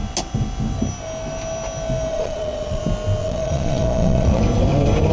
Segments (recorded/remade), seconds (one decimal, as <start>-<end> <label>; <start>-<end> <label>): 0.0-2.1 recorded; 2.1-2.8 remade; 2.8-3.2 recorded; 3.2-4.4 remade; 4.4-5.1 recorded